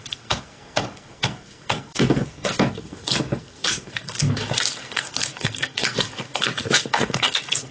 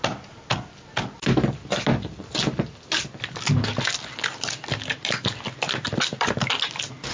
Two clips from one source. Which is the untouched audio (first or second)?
second